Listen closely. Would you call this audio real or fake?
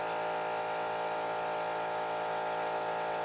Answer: real